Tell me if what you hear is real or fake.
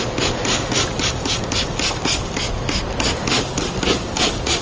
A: real